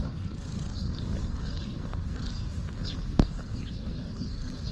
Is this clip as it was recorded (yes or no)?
no